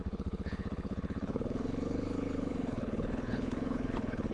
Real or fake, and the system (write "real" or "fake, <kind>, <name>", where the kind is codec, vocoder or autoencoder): fake, codec, HILCodec